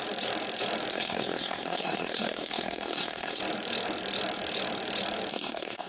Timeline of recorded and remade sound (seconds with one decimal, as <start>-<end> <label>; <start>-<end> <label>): 0.0-0.9 recorded; 0.9-3.4 remade; 3.4-5.3 recorded; 5.3-5.9 remade